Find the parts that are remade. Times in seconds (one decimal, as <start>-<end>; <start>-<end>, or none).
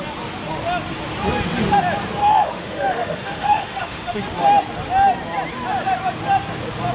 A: 2.2-4.2